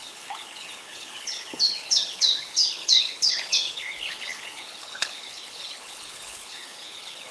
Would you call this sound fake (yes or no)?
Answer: yes